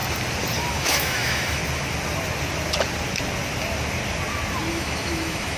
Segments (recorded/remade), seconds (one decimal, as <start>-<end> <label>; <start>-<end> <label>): 0.0-0.7 recorded; 0.7-1.6 remade; 1.6-4.7 recorded; 4.7-5.6 remade